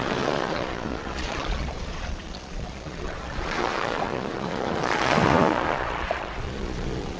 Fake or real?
fake